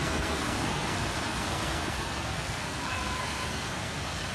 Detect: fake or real fake